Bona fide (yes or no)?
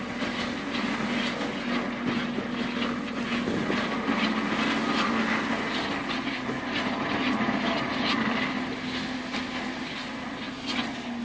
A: yes